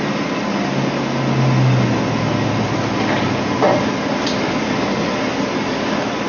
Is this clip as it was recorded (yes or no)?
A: yes